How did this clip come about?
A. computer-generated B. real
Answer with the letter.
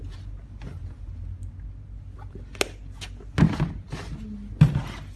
B